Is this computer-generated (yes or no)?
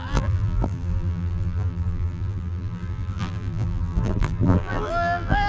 yes